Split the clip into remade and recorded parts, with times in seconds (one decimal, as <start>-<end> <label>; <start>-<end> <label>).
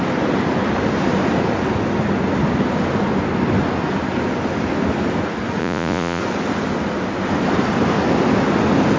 0.0-5.6 recorded; 5.6-6.2 remade; 6.2-9.0 recorded